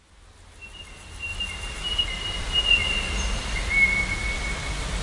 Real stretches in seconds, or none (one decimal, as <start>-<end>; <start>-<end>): 0.0-5.0